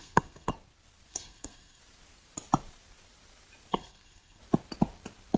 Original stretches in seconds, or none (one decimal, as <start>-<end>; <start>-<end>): 0.5-1.1; 1.8-3.7; 4.4-5.4